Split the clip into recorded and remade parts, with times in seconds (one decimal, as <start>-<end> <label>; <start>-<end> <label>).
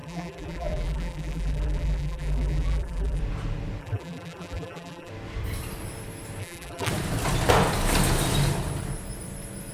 0.0-3.2 remade; 3.2-3.8 recorded; 3.8-5.1 remade; 5.1-6.4 recorded; 6.4-6.9 remade; 6.9-9.7 recorded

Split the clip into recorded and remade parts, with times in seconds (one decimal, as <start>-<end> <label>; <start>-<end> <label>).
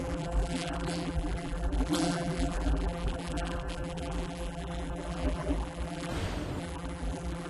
0.0-6.1 remade; 6.1-6.6 recorded; 6.6-7.5 remade